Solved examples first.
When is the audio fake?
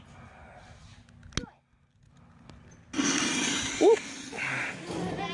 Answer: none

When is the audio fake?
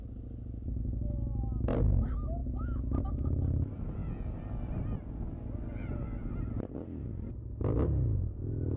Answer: 2.4-3.0 (autoencoder, DAC-VAE)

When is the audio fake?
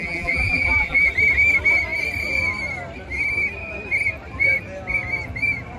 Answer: 0.0-1.1 (vocoder, BigVGAN v2)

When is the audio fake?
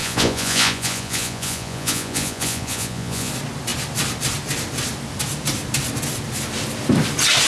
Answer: 0.0-3.3 (vocoder, Vocos)